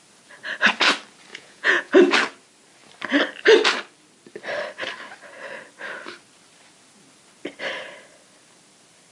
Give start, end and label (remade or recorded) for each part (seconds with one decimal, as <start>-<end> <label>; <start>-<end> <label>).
0.0-1.3 recorded; 1.3-1.9 remade; 1.9-9.1 recorded